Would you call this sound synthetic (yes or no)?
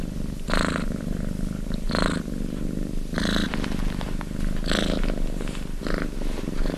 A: no